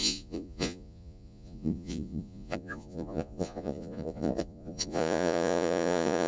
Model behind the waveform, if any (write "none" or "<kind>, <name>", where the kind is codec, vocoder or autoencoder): vocoder, Vocos